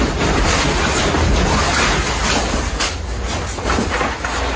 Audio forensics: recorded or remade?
recorded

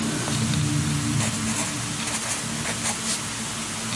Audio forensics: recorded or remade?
recorded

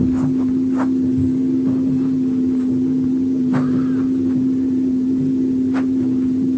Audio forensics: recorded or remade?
recorded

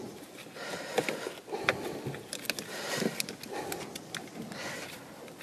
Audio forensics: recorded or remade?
recorded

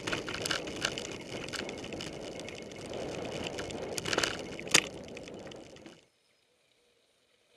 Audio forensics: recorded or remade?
recorded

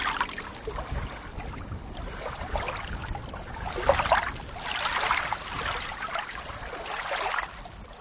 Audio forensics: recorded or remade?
recorded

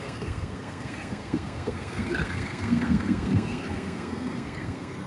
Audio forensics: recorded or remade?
remade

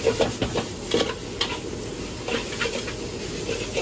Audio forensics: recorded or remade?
recorded